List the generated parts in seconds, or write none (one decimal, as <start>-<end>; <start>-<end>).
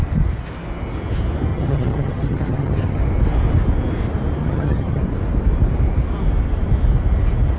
1.5-3.0; 4.4-5.0